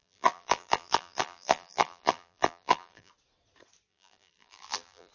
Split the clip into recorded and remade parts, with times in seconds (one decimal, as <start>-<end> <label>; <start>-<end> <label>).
0.0-3.1 remade; 3.1-3.9 recorded; 3.9-5.1 remade